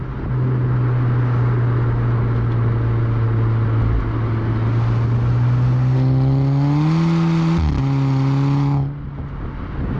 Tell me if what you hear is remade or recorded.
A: recorded